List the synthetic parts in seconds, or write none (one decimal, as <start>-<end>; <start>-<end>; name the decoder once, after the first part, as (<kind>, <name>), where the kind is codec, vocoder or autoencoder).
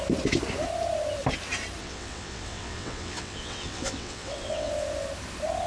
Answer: 1.8-4.7 (vocoder, WaveNeXt)